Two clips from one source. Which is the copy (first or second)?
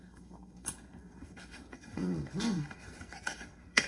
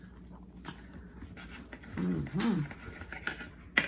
first